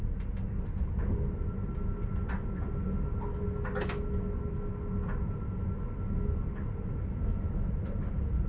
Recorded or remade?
recorded